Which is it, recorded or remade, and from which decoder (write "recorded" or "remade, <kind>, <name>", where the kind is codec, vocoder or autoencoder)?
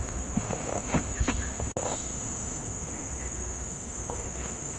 remade, autoencoder, DAC-VAE